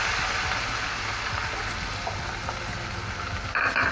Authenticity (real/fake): real